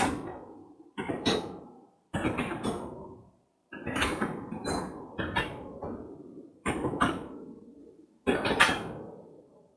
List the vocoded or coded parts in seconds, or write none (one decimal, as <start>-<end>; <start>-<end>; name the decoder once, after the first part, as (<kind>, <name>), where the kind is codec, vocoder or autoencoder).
0.0-7.8 (vocoder, BigVGAN v2); 8.6-9.8